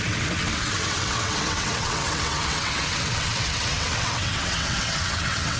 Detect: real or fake fake